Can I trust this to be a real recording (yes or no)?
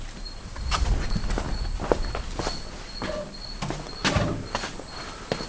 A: yes